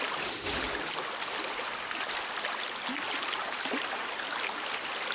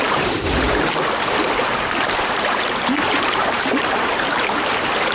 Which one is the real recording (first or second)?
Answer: first